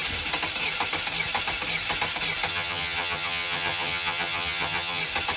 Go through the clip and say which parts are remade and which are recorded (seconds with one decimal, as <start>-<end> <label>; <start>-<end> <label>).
0.0-2.5 recorded; 2.5-5.0 remade; 5.0-5.4 recorded